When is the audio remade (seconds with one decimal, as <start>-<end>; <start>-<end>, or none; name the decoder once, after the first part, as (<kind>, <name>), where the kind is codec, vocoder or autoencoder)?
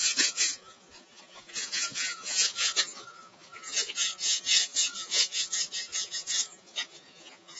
0.0-7.6 (vocoder, Vocos)